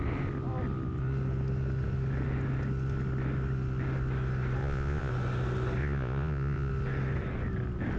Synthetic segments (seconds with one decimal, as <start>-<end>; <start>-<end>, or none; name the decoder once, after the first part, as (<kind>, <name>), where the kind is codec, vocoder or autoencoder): 4.6-5.1 (vocoder, Vocos); 5.8-6.7